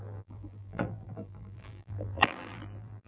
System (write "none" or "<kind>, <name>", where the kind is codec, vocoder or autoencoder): vocoder, BigVGAN v2